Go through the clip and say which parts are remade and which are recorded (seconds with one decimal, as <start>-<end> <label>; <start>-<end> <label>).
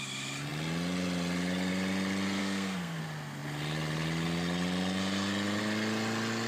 0.0-2.4 recorded; 2.4-3.0 remade; 3.0-6.5 recorded